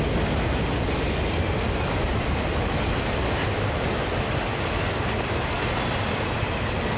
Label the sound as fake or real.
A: real